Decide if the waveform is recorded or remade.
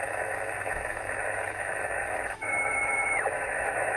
remade